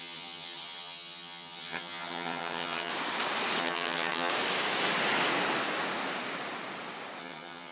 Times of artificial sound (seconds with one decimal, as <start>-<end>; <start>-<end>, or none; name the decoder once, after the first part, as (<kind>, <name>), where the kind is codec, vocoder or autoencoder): 0.0-2.9 (vocoder, HiFi-GAN); 3.6-4.3; 7.2-7.7